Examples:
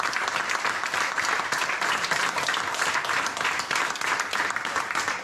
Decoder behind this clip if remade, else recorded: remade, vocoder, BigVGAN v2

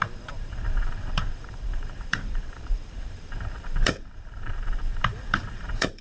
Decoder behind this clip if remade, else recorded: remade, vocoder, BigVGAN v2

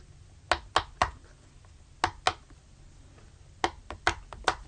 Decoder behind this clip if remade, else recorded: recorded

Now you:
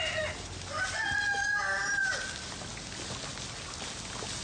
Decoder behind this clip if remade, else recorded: recorded